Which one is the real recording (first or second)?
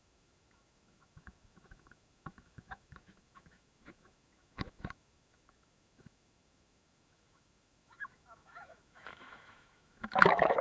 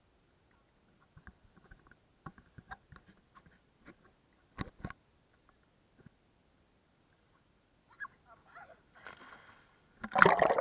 second